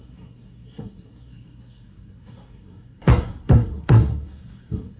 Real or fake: fake